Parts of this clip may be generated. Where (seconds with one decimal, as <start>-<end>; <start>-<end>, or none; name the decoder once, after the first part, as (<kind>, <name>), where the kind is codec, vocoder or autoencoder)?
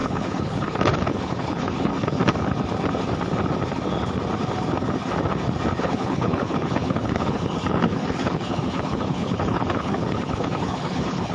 0.0-1.9 (codec, HILCodec); 5.8-11.3